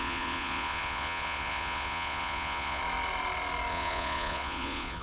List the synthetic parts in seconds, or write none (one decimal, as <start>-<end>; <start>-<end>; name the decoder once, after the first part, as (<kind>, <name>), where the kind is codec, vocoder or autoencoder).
0.0-2.8 (vocoder, Vocos); 3.7-5.0